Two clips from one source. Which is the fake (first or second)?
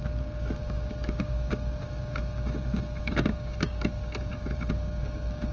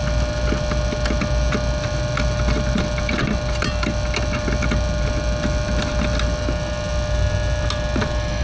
first